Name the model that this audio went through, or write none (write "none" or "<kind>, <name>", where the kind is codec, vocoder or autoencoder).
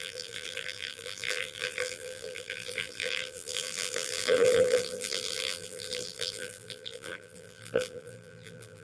vocoder, BigVGAN v2